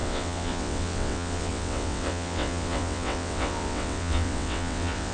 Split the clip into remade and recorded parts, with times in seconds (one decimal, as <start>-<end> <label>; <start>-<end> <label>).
0.0-5.1 remade